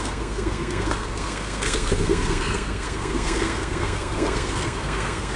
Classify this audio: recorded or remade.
remade